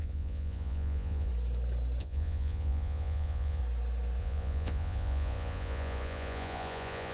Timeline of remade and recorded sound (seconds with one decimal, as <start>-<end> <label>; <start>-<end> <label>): 0.0-1.3 remade; 1.3-2.0 recorded; 2.0-3.6 remade; 3.6-4.2 recorded; 4.2-7.1 remade